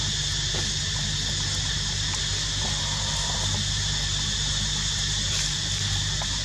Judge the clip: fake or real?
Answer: real